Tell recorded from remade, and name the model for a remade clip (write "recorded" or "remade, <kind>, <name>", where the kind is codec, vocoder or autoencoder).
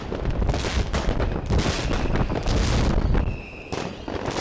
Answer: recorded